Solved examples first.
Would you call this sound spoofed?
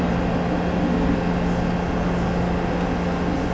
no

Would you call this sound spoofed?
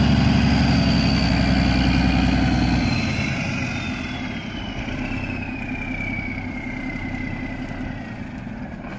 no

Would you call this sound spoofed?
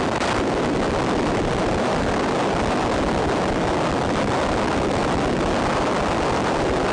no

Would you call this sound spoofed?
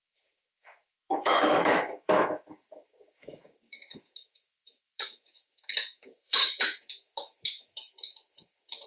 yes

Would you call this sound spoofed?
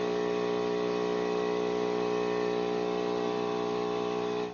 no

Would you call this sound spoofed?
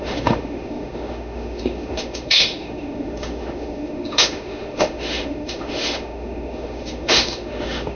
yes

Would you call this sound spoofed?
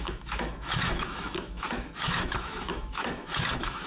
yes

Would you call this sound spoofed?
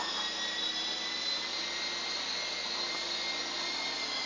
no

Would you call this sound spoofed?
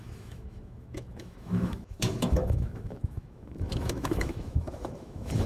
yes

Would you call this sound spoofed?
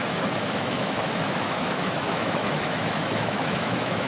yes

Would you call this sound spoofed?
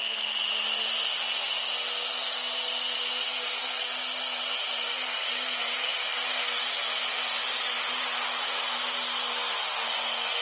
no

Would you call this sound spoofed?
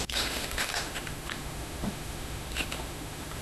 yes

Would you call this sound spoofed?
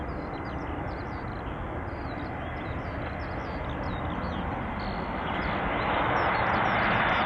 no